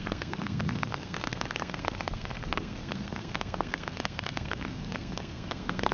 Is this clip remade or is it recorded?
remade